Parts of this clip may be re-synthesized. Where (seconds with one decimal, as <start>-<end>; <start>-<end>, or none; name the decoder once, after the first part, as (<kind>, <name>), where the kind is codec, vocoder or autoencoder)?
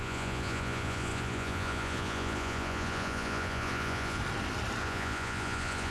0.0-4.2 (vocoder, Vocos); 4.8-5.9